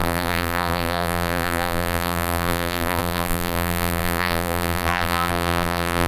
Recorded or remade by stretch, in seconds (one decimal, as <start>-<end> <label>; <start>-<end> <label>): 0.0-6.1 remade

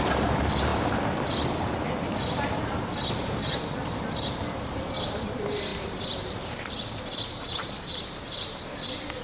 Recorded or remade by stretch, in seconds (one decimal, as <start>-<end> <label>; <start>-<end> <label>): 0.0-0.7 remade; 0.7-1.6 recorded; 1.6-9.2 remade

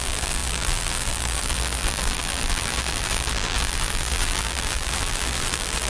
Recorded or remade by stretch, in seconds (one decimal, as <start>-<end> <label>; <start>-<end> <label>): 0.0-5.9 remade

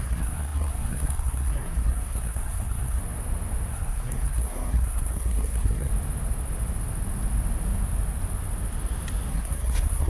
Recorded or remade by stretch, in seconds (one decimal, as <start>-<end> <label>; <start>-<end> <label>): 0.0-3.0 remade; 3.0-3.7 recorded; 3.7-5.9 remade; 5.9-9.3 recorded; 9.3-10.1 remade